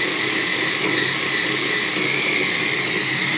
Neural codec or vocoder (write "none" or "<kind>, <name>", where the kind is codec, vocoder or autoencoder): none